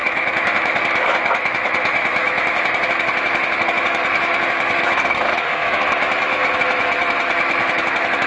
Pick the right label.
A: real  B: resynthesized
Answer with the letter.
B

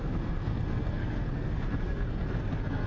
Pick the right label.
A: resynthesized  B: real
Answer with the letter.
A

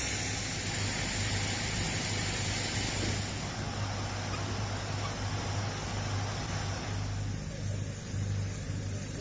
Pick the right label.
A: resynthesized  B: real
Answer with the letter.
B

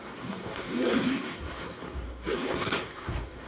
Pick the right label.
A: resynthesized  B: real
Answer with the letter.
A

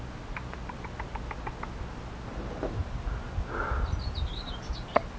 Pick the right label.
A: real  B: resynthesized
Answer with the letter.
A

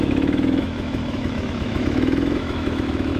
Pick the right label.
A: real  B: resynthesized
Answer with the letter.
B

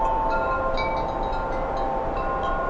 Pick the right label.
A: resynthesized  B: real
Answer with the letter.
B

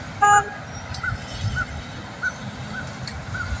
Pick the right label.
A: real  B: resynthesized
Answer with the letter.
A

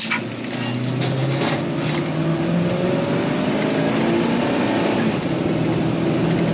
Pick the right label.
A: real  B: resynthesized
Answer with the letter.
A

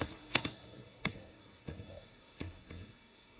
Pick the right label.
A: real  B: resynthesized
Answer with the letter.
B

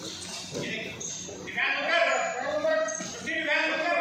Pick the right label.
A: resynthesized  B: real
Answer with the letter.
B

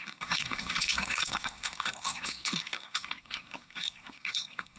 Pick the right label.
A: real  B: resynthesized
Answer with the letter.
B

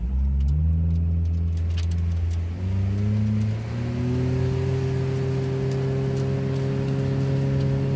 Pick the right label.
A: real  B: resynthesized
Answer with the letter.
A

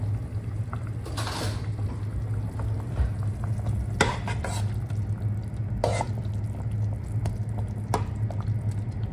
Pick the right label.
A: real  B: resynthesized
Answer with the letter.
A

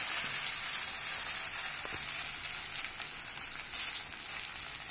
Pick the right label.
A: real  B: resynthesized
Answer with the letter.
A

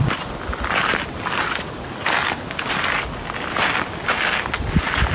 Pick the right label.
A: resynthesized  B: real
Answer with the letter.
B